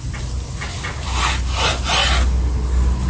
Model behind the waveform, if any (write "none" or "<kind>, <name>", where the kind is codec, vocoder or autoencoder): none